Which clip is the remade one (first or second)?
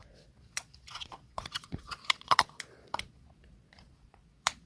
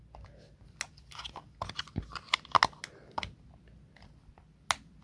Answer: first